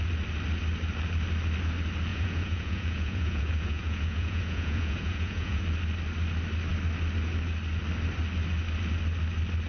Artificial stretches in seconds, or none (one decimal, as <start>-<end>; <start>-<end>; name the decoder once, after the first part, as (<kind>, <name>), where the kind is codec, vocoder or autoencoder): 2.1-5.6 (vocoder, Vocos)